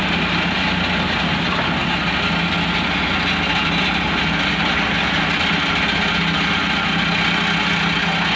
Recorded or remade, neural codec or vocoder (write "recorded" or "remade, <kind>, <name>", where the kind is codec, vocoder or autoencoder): recorded